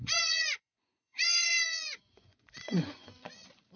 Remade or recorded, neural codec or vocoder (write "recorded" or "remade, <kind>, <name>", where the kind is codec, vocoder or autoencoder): remade, vocoder, Vocos